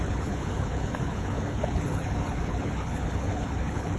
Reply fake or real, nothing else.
fake